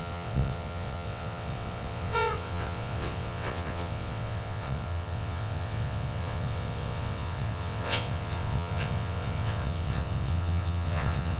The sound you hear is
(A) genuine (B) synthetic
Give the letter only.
B